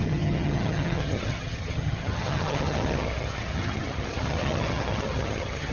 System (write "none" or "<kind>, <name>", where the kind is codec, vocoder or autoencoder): vocoder, HiFi-GAN